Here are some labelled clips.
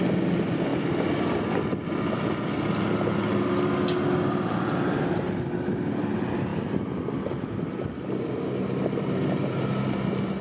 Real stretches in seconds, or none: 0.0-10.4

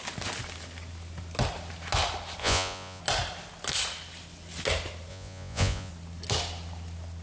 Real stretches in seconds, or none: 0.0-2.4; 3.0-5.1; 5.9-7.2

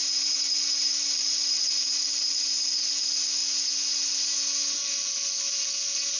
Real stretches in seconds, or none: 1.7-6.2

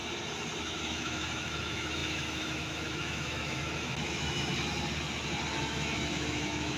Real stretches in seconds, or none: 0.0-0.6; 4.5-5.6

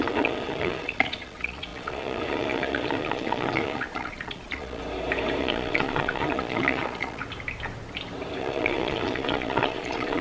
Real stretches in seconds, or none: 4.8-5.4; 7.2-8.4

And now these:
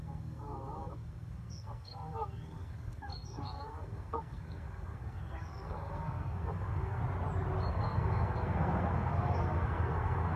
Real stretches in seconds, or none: 7.0-7.7

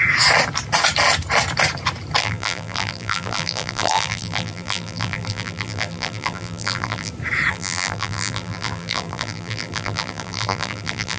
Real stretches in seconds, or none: 0.0-2.2; 7.1-7.5

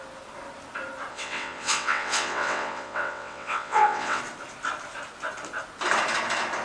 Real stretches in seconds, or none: 0.0-1.1; 4.2-6.6